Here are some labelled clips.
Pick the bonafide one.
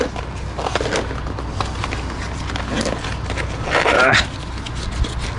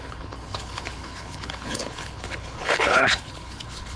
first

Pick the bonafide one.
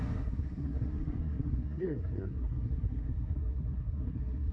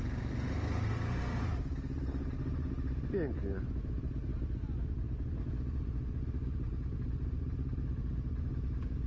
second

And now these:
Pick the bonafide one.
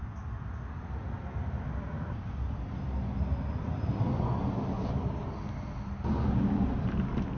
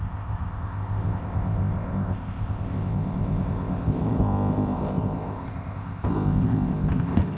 first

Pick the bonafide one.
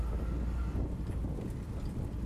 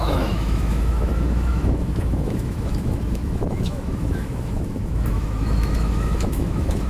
first